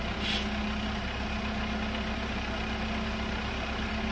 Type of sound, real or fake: real